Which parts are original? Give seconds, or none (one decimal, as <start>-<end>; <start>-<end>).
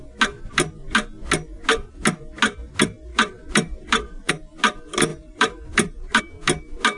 0.0-3.1; 4.3-5.1; 6.2-7.0